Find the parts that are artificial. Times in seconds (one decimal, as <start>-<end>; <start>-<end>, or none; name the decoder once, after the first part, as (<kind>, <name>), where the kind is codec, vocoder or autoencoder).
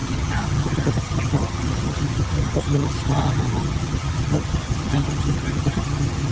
0.0-6.3 (vocoder, HiFi-GAN)